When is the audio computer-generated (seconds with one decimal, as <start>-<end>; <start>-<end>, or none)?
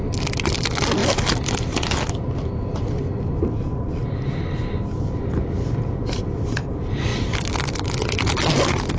none